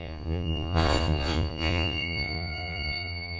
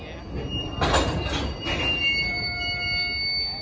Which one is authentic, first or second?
second